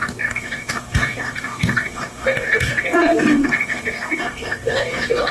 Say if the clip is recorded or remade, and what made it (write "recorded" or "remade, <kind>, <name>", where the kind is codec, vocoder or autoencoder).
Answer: remade, codec, DAC